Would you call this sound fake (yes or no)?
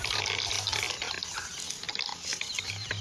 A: no